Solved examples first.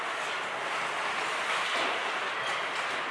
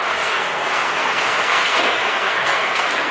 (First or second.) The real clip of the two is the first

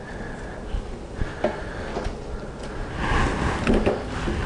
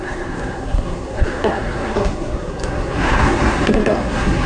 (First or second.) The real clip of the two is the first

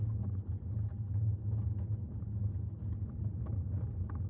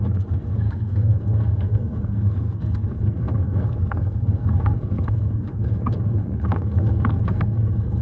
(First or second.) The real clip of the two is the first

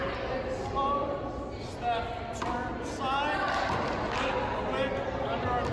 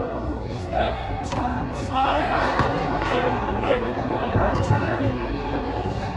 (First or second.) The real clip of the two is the first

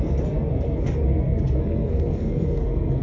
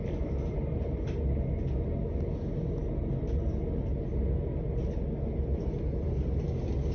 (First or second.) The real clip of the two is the second